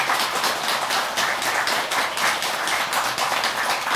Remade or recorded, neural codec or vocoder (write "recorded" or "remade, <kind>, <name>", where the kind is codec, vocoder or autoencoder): recorded